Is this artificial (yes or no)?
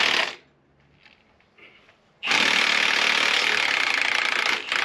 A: no